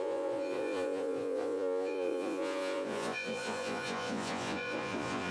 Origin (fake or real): fake